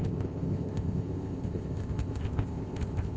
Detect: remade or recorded remade